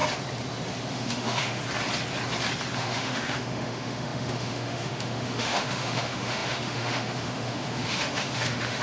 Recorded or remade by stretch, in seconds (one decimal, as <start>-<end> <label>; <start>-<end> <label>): 0.0-0.9 recorded; 0.9-1.6 remade; 1.6-2.8 recorded; 2.8-8.8 remade